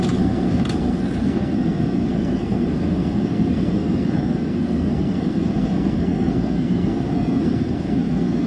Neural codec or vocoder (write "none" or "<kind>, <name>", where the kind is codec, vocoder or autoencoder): codec, SNAC